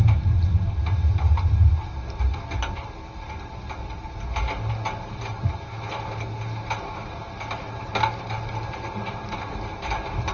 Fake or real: real